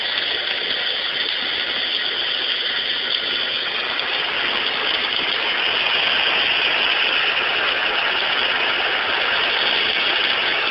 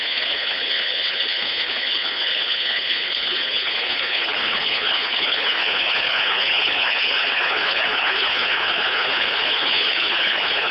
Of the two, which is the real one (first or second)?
first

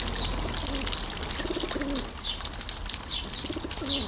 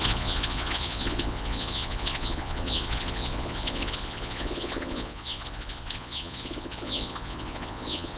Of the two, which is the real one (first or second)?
first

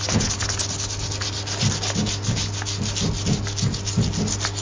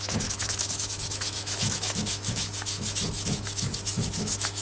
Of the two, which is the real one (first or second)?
first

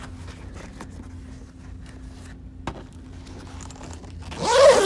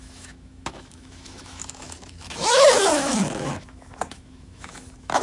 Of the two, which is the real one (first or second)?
first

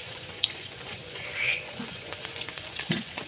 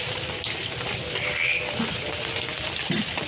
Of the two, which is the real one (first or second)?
second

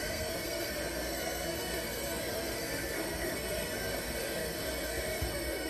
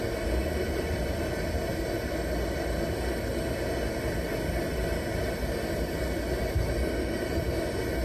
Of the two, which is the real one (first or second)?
second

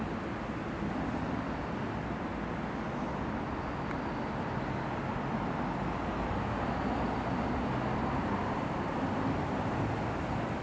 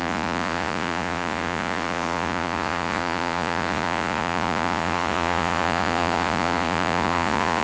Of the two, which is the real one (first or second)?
first